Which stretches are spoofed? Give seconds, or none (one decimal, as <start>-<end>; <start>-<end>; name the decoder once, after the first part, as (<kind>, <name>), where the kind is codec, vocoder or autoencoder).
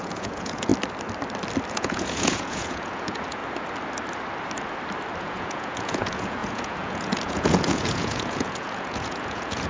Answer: 0.0-0.7 (vocoder, Vocos); 1.7-3.4; 5.2-9.7